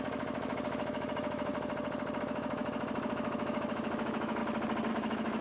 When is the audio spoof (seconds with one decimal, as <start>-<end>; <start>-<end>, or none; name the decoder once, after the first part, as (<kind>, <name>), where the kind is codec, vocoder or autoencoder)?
0.0-1.5 (autoencoder, DAC-VAE); 2.2-2.6; 3.1-4.4; 4.9-5.4